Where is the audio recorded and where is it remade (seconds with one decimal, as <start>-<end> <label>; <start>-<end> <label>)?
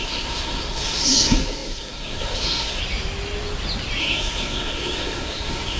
0.0-2.8 remade; 2.8-4.0 recorded; 4.0-5.8 remade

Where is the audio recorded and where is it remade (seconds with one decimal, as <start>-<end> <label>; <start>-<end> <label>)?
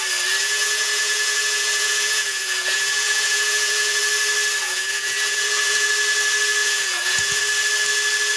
0.0-0.4 recorded; 0.4-4.0 remade; 4.0-4.6 recorded; 4.6-5.9 remade; 5.9-6.6 recorded; 6.6-7.4 remade; 7.4-8.4 recorded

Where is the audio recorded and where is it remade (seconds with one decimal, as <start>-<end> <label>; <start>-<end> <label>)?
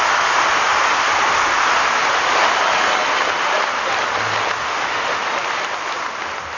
0.0-4.6 recorded; 4.6-5.2 remade; 5.2-6.6 recorded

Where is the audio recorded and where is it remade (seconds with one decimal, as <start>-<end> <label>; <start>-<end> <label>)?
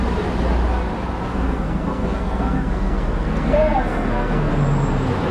0.0-1.3 recorded; 1.3-4.5 remade; 4.5-5.3 recorded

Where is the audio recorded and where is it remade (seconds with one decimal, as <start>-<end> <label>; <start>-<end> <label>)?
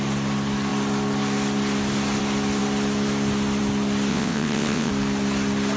0.0-4.1 recorded; 4.1-4.9 remade; 4.9-5.8 recorded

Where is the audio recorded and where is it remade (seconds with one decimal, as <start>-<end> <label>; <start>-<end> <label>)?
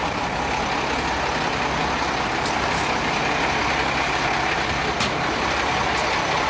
0.0-6.5 recorded